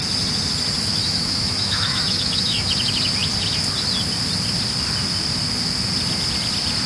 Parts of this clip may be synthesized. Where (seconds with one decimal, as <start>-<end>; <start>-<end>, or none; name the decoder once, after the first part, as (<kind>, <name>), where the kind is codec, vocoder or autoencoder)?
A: 0.9-2.7 (autoencoder, DAC-VAE)